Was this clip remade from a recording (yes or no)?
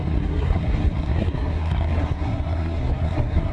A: yes